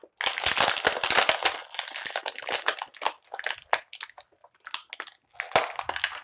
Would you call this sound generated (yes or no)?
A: no